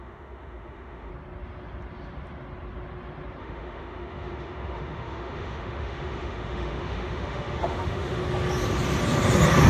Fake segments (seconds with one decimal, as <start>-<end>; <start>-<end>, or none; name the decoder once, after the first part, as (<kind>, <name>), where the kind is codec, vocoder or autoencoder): 0.0-1.1 (autoencoder, DAC-VAE); 3.4-8.2